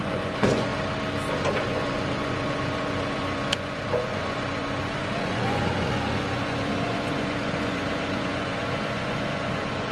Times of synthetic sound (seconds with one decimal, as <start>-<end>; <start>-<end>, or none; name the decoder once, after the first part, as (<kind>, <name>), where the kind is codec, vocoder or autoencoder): 0.0-0.7 (vocoder, Vocos); 1.6-9.9